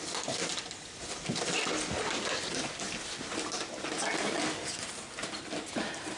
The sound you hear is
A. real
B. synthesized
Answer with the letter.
A